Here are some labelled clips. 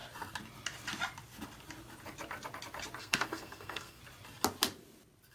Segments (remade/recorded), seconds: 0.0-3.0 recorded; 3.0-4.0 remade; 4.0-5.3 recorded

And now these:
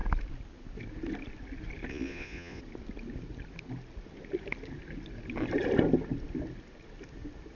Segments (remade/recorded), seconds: 0.0-1.9 recorded; 1.9-2.6 remade; 2.6-7.6 recorded

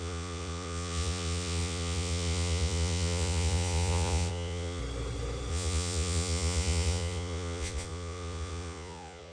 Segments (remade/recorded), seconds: 0.0-4.8 remade; 4.8-5.5 recorded; 5.5-9.3 remade

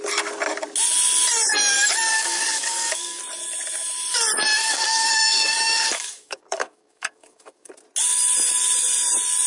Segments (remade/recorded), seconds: 0.0-2.1 recorded; 2.1-3.2 remade; 3.2-4.6 recorded; 4.6-7.7 remade; 7.7-9.5 recorded

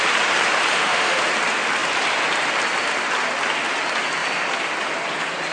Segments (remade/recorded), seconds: 0.0-0.7 recorded; 0.7-1.2 remade; 1.2-5.5 recorded

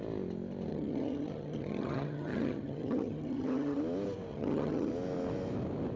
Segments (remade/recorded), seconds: 0.0-0.7 recorded; 0.7-3.8 remade; 3.8-4.3 recorded; 4.3-4.9 remade; 4.9-6.0 recorded

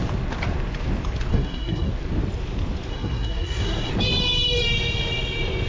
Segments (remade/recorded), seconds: 0.0-1.3 recorded; 1.3-1.9 remade; 1.9-2.9 recorded; 2.9-3.9 remade; 3.9-5.7 recorded

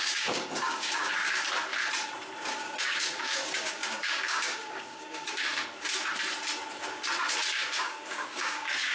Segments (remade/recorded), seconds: 0.0-1.1 remade; 1.1-2.5 recorded; 2.5-5.5 remade; 5.5-7.7 recorded; 7.7-8.9 remade